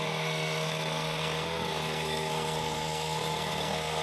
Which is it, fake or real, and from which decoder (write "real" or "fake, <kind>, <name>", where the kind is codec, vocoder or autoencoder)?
fake, codec, SNAC